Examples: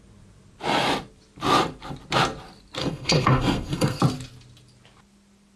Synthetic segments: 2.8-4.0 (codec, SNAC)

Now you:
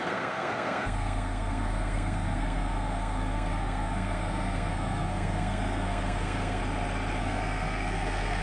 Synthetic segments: 0.0-6.6 (codec, SNAC); 7.2-8.4

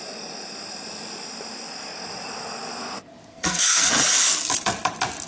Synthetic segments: 3.3-3.9 (codec, SNAC)